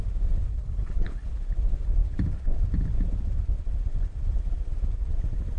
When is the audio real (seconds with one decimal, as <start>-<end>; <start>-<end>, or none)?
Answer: 0.0-0.5; 1.3-5.6